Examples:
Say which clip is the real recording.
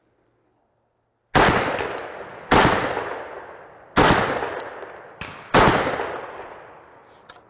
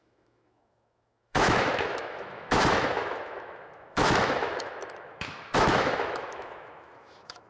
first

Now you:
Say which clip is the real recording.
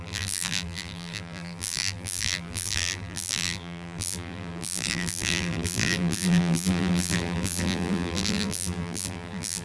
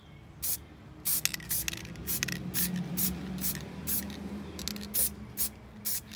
second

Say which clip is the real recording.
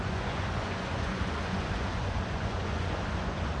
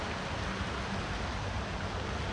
second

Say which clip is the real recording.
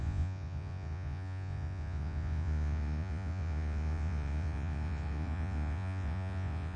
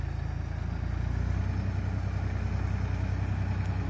second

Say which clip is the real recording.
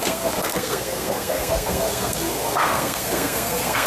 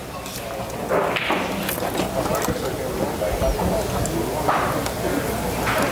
second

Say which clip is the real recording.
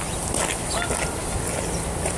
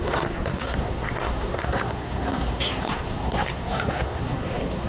first